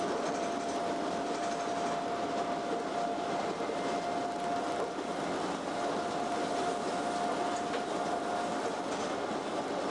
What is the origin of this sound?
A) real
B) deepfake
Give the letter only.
A